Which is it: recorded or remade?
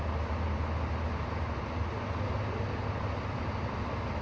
recorded